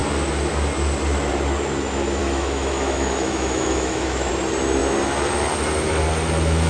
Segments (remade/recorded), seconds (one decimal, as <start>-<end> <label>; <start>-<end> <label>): 0.0-2.2 recorded; 2.2-4.3 remade; 4.3-6.7 recorded